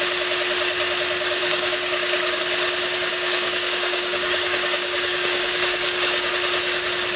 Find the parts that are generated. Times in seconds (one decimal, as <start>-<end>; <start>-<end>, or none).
1.4-2.4; 3.1-6.3